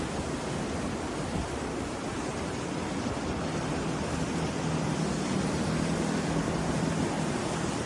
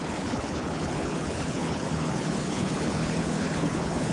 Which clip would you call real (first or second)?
first